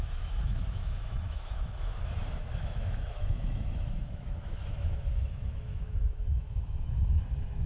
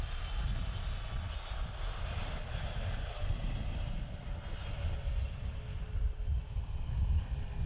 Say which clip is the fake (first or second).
first